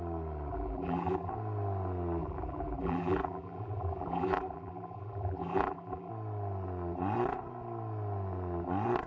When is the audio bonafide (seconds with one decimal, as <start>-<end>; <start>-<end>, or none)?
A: 0.0-0.5; 1.3-2.2; 6.1-9.1